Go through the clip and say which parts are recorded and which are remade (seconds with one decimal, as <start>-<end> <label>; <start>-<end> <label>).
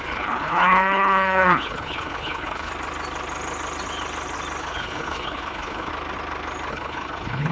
0.0-2.7 remade; 2.7-4.6 recorded; 4.6-5.9 remade; 5.9-6.7 recorded; 6.7-7.5 remade